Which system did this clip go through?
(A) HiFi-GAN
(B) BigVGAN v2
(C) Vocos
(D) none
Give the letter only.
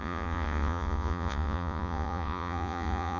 C